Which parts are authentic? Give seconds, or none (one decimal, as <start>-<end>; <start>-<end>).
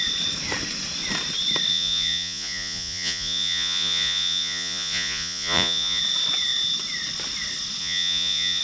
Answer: 0.0-1.7; 6.0-7.8